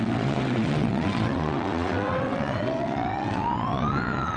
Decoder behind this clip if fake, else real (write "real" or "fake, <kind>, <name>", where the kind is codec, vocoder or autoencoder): fake, vocoder, WaveNeXt